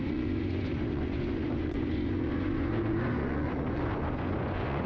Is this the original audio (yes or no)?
no